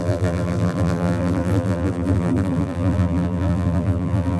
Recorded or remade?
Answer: remade